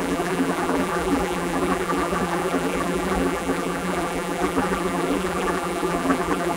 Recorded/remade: remade